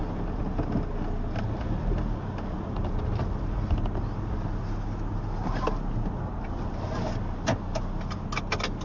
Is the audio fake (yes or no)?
no